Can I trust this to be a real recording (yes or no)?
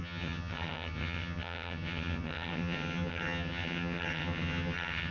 no